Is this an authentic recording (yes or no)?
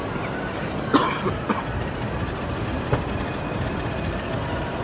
yes